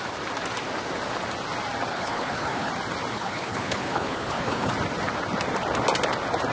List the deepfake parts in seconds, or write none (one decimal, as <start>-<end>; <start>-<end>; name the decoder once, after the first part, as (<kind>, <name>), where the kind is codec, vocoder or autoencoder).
1.9-2.7 (codec, HILCodec); 3.1-4.7